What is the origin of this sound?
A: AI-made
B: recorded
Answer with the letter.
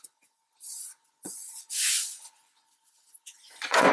A